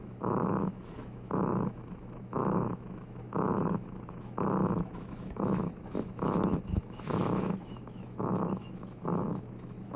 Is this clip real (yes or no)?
no